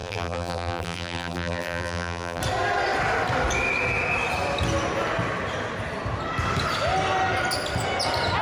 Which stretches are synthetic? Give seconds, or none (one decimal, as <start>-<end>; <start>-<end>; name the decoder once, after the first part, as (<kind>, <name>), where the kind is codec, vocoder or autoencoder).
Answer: 0.0-2.4 (vocoder, BigVGAN v2)